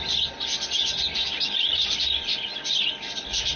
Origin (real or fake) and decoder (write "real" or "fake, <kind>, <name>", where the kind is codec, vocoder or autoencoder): real